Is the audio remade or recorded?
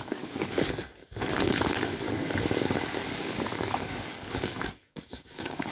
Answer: remade